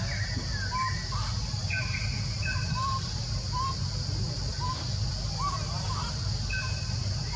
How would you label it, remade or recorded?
recorded